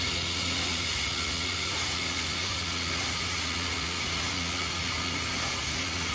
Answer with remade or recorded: remade